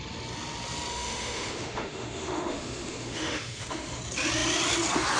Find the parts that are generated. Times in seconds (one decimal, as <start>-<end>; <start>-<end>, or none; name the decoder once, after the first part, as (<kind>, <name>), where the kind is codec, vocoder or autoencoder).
0.9-4.0 (autoencoder, DAC-VAE)